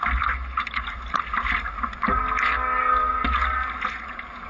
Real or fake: real